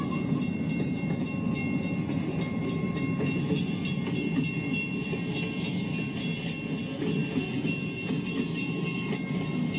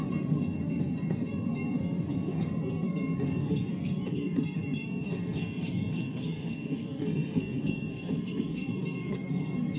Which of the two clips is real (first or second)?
first